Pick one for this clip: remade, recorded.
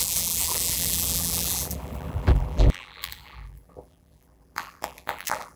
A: remade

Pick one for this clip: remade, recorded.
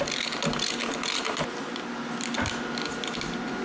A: recorded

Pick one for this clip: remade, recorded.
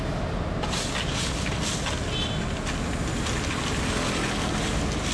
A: recorded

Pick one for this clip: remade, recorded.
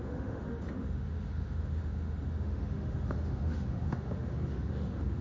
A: remade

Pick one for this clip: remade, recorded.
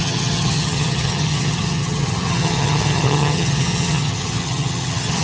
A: remade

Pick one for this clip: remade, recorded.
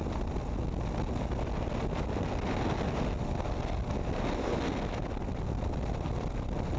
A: recorded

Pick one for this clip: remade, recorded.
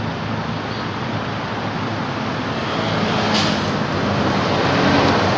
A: recorded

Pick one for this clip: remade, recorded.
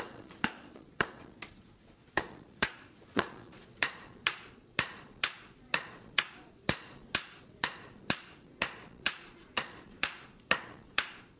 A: remade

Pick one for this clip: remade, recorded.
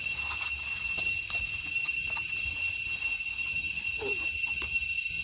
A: recorded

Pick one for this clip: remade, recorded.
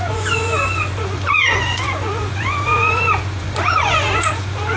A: remade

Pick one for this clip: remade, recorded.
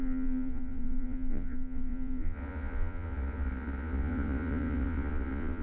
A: remade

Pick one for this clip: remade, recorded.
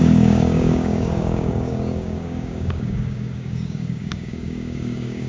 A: remade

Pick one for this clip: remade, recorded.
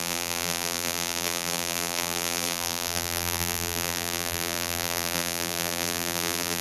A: remade